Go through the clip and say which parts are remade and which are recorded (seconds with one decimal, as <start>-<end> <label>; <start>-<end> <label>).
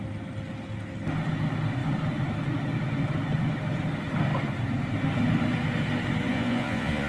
0.0-6.3 recorded; 6.3-7.1 remade